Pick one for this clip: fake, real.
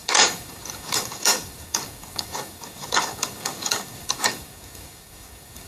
fake